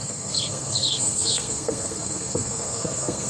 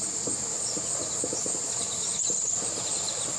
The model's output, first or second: first